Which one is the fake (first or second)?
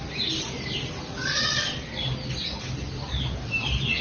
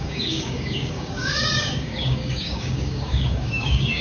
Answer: second